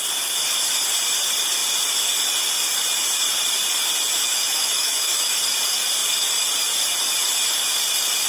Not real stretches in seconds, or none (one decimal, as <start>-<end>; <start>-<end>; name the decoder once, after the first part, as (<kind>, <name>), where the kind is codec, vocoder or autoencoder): 4.2-5.3 (autoencoder, DAC-VAE)